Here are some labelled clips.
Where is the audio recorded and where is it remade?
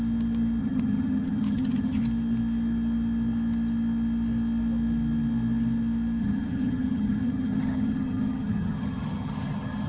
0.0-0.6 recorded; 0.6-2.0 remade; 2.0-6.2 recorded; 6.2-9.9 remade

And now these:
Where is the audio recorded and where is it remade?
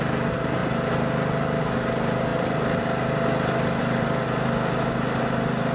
0.0-5.7 recorded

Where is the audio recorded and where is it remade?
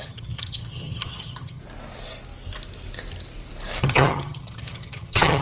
0.0-1.6 remade; 1.6-3.8 recorded; 3.8-5.4 remade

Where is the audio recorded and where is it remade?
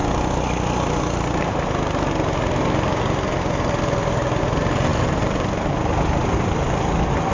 0.0-4.9 recorded; 4.9-5.7 remade; 5.7-7.3 recorded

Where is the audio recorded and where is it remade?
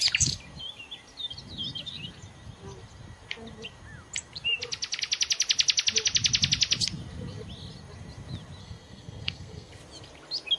0.0-8.6 recorded; 8.6-9.7 remade; 9.7-10.6 recorded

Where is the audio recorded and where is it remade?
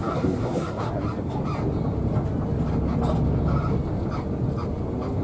0.0-0.9 remade; 0.9-5.2 recorded